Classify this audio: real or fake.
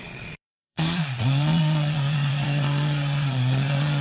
fake